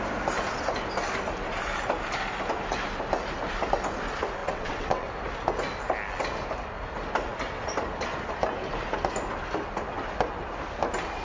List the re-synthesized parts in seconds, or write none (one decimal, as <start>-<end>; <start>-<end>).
4.4-5.1